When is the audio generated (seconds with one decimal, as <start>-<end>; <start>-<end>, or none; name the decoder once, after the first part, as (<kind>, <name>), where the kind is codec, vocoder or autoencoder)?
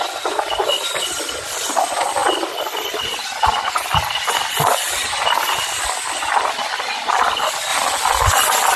none